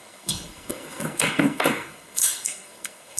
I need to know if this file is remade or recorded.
remade